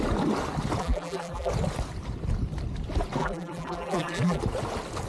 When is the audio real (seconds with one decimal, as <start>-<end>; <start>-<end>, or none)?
0.0-0.8; 1.5-3.2; 4.4-5.1